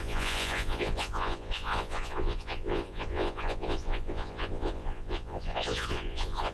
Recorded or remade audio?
remade